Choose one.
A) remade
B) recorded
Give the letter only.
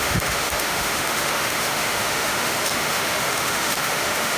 A